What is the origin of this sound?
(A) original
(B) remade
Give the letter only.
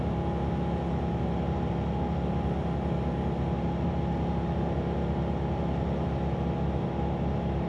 A